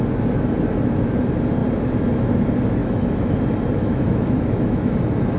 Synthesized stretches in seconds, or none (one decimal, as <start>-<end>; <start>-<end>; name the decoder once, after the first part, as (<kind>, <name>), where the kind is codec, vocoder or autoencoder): 2.8-3.3 (autoencoder, DAC-VAE); 3.8-5.0